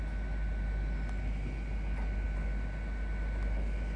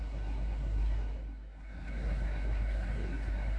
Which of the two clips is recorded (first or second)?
first